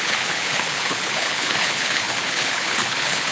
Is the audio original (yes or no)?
no